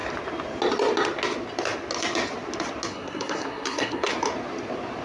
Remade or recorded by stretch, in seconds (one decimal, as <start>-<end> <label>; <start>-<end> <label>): 0.0-2.9 recorded; 2.9-4.1 remade; 4.1-5.0 recorded